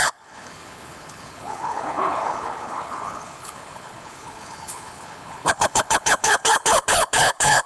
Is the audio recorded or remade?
remade